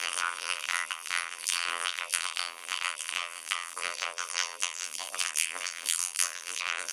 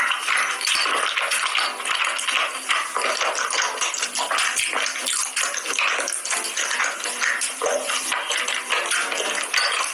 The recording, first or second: second